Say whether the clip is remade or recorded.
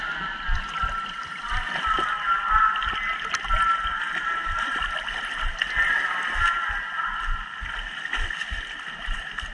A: recorded